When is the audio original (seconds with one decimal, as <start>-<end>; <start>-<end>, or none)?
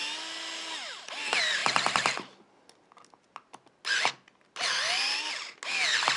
0.0-6.2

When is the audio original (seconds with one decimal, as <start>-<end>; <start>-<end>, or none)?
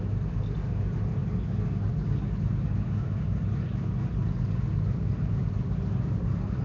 0.0-6.6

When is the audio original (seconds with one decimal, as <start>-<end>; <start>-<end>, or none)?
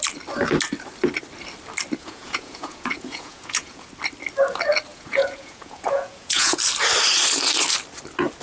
0.0-2.0; 3.9-4.9; 6.6-8.4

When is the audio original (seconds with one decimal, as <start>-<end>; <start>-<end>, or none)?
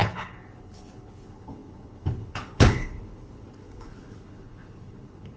none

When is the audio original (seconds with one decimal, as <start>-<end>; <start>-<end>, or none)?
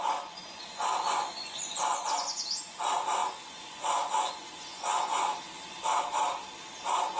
5.3-7.2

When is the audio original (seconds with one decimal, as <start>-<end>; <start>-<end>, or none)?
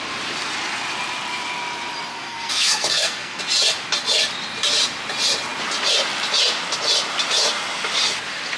0.0-2.1; 3.4-8.6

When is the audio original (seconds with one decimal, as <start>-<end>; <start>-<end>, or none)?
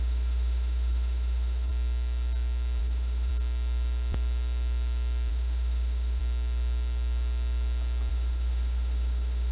1.7-2.8; 3.3-5.3; 6.2-8.1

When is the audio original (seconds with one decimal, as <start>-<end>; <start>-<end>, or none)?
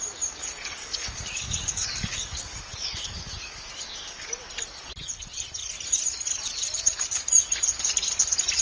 0.0-0.8; 4.3-8.6